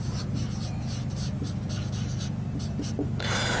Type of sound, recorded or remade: recorded